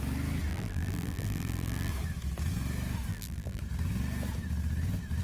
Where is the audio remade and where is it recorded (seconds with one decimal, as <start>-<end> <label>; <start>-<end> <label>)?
0.0-0.5 recorded; 0.5-1.9 remade; 1.9-3.1 recorded; 3.1-3.6 remade; 3.6-5.2 recorded

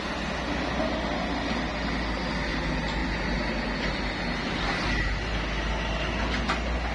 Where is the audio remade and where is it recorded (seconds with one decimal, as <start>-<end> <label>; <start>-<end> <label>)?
0.0-6.9 recorded

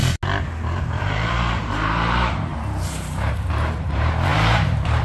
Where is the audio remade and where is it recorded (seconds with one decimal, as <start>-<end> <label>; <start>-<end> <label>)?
0.0-0.8 recorded; 0.8-5.0 remade

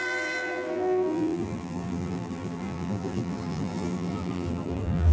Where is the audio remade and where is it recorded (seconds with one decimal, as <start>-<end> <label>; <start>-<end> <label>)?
0.0-5.1 remade

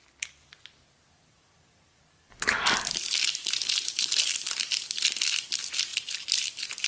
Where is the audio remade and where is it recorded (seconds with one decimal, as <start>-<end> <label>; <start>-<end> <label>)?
0.0-3.4 recorded; 3.4-4.1 remade; 4.1-6.9 recorded

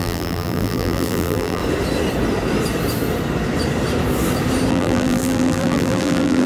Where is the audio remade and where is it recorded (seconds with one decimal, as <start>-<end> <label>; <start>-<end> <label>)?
0.0-1.6 remade; 1.6-4.7 recorded; 4.7-6.5 remade